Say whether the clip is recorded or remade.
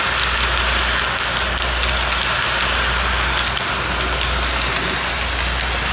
recorded